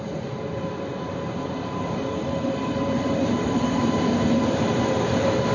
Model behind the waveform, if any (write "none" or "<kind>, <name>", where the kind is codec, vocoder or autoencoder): vocoder, BigVGAN v2